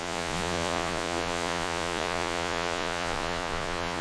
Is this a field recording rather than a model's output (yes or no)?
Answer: no